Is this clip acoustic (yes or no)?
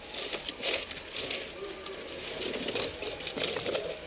yes